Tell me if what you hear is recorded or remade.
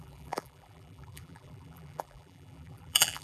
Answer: remade